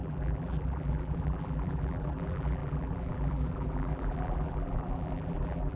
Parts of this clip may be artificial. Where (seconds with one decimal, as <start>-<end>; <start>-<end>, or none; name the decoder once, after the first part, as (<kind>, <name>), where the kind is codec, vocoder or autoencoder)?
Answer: 0.0-5.8 (vocoder, BigVGAN v2)